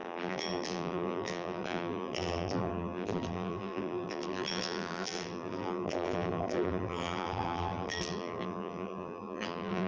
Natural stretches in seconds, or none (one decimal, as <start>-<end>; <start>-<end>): none